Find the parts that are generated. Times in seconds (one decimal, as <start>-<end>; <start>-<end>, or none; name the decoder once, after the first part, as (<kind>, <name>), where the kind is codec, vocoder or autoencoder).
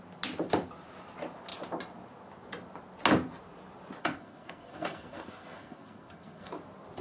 4.0-6.5 (codec, SNAC)